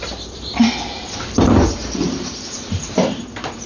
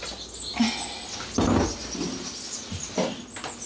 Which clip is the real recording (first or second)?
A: second